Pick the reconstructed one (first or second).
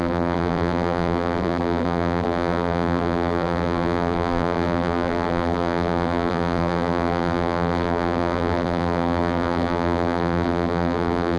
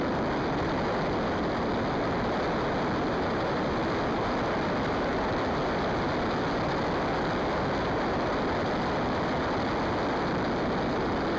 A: first